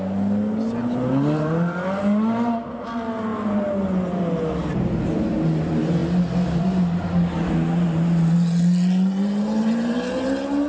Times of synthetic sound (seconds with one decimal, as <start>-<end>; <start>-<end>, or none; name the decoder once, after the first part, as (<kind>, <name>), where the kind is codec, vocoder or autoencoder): none